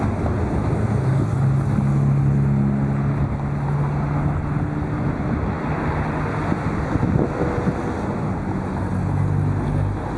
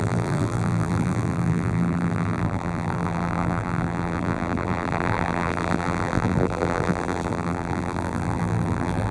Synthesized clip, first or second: second